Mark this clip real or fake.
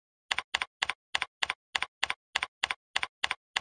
real